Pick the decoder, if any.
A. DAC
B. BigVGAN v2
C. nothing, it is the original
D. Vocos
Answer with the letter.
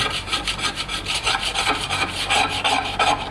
B